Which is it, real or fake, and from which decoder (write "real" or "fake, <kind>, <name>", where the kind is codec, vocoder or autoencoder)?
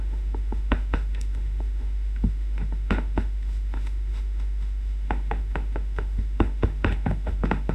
fake, autoencoder, DAC-VAE